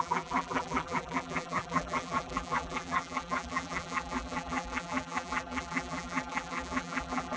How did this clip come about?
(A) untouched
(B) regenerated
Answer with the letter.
B